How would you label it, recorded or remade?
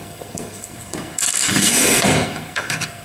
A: remade